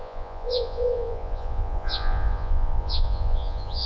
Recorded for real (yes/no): no